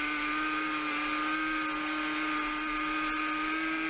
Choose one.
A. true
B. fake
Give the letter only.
A